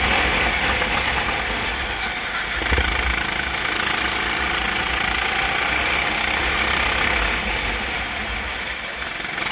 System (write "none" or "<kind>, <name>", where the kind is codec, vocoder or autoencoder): none